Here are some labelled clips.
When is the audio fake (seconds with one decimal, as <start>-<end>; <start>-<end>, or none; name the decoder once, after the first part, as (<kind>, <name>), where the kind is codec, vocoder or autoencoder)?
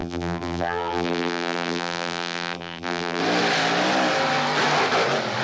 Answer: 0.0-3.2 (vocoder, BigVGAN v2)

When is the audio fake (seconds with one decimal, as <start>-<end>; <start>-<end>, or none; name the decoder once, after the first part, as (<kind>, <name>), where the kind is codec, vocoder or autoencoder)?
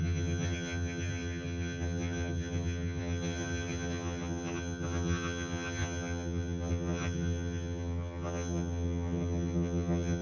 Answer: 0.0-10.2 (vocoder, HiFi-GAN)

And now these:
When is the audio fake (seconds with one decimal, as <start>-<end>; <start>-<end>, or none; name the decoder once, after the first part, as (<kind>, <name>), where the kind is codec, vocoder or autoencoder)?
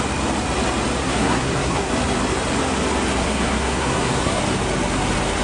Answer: 1.0-1.9 (codec, SNAC); 3.2-4.4